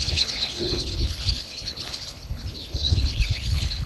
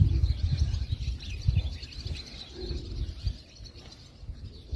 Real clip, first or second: second